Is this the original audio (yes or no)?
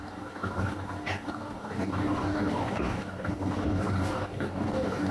no